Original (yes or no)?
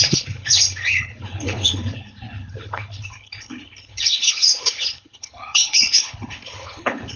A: no